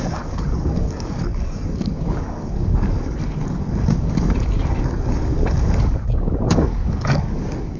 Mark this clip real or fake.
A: fake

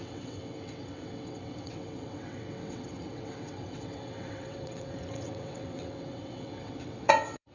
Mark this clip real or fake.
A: fake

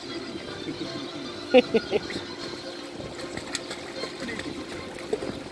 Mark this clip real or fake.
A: real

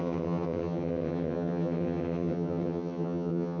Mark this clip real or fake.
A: fake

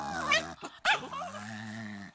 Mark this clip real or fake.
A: real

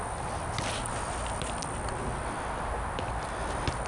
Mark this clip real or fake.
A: real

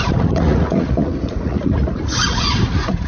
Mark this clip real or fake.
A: fake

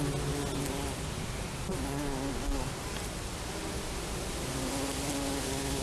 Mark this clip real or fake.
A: real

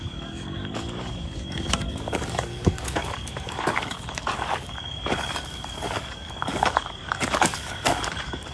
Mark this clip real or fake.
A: fake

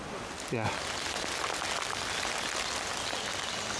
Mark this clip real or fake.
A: real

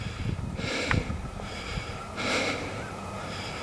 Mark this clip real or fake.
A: fake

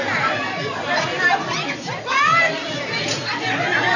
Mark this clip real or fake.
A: real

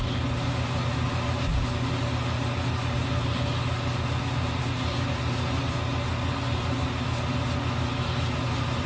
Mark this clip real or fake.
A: real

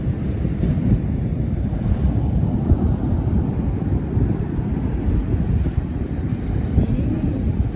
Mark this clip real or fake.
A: real